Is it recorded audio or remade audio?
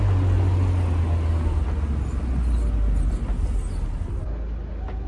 recorded